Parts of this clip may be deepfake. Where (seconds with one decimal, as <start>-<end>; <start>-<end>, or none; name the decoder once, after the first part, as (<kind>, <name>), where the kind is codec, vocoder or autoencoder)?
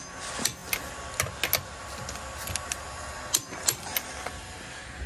none